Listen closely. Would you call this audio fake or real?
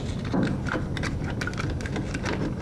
real